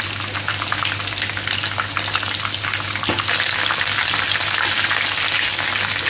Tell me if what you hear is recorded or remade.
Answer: recorded